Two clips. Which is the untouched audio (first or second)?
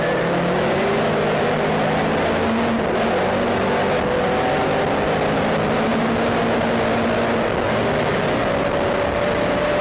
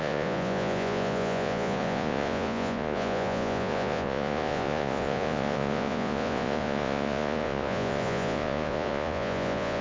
first